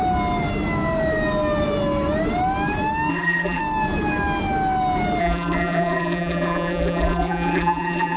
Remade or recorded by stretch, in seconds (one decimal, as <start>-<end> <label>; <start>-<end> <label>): 0.0-3.1 recorded; 3.1-3.6 remade; 3.6-5.2 recorded; 5.2-8.2 remade